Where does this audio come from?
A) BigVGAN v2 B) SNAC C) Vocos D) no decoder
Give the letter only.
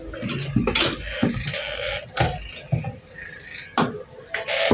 D